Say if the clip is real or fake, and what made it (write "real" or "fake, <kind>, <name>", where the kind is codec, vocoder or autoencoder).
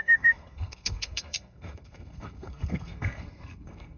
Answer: fake, codec, SNAC